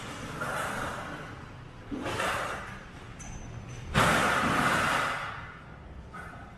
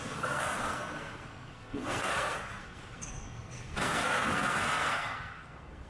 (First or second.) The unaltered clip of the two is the first